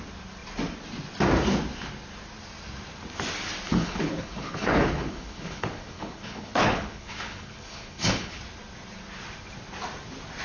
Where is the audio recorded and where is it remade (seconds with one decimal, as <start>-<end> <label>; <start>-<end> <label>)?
0.0-3.7 recorded; 3.7-8.4 remade; 8.4-10.4 recorded